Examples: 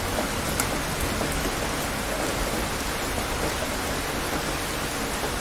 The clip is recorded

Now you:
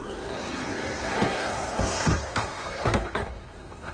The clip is remade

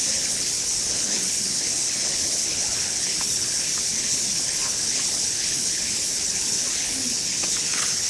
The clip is remade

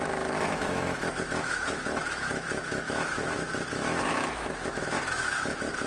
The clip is remade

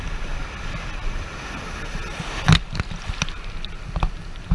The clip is recorded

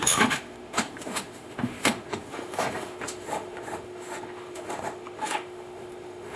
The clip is remade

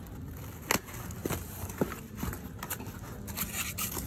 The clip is recorded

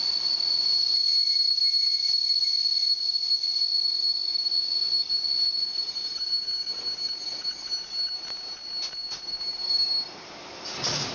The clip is recorded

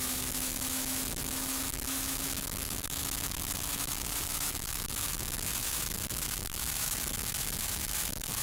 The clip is remade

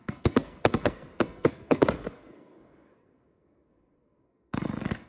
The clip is remade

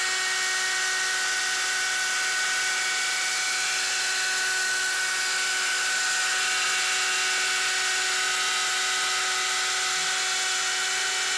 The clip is recorded